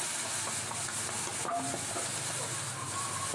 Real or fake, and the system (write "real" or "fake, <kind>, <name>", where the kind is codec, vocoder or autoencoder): real